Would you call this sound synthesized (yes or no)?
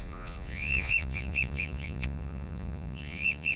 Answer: yes